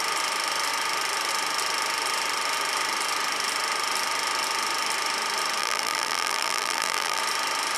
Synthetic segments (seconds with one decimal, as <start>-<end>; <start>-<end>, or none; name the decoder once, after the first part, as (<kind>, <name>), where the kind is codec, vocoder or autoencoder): 5.6-7.2 (vocoder, BigVGAN v2)